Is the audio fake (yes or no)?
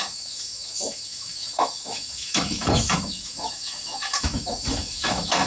yes